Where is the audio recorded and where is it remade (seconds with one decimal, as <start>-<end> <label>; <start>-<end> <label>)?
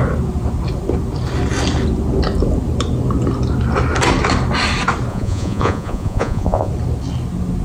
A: 0.0-5.1 recorded; 5.1-6.7 remade; 6.7-7.6 recorded